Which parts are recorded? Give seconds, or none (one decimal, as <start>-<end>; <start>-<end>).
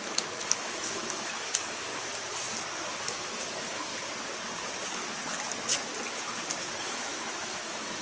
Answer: 1.9-3.0; 3.9-6.8